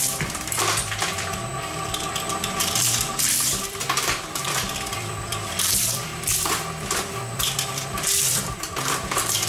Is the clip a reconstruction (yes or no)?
yes